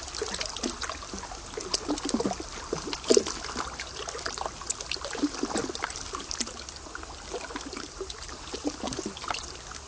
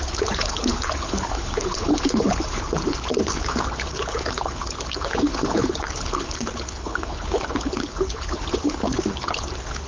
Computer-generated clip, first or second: second